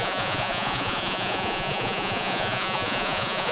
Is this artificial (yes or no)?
yes